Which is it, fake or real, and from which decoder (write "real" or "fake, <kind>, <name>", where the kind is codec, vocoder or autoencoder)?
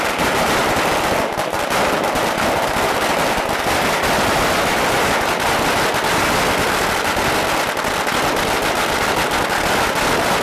real